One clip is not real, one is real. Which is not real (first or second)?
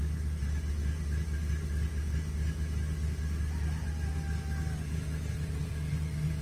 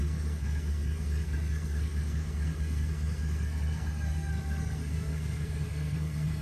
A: second